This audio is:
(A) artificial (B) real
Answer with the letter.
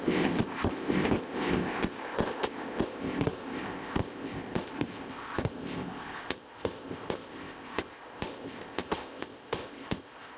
A